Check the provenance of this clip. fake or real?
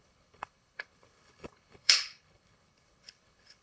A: fake